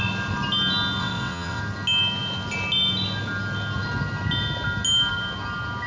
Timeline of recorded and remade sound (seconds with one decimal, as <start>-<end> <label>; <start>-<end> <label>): 0.0-1.0 recorded; 1.0-1.6 remade; 1.6-5.9 recorded